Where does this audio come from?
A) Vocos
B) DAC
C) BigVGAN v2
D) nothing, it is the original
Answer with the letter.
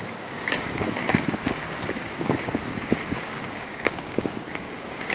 B